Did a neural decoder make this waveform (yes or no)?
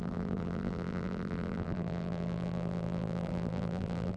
yes